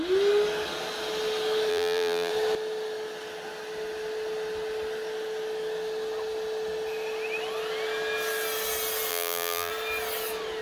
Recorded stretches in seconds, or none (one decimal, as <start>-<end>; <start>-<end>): 0.0-1.7; 2.3-9.1; 9.7-10.6